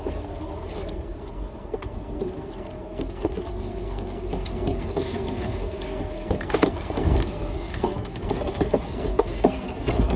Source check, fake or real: fake